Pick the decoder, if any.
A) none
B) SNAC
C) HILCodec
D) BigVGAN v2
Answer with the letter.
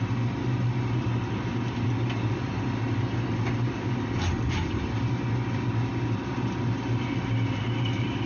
A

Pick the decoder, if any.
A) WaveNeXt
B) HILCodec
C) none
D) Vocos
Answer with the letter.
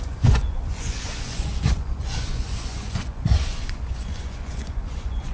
D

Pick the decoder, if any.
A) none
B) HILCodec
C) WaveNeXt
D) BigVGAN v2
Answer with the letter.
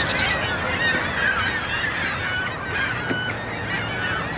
A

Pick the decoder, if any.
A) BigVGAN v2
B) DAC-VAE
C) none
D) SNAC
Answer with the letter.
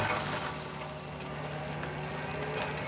C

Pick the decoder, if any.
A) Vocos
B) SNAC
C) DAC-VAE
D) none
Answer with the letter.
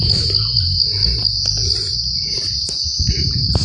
D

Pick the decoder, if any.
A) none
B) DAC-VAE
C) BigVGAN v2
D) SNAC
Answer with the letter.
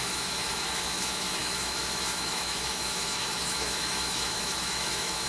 B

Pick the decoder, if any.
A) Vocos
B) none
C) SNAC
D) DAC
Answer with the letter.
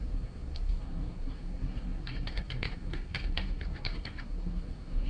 C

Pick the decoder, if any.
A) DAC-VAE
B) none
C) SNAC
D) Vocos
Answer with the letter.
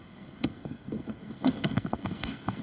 C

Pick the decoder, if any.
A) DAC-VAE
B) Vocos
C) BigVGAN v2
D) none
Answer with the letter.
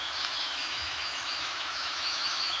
A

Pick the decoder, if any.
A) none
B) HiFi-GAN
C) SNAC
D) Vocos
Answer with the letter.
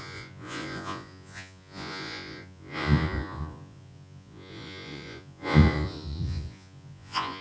D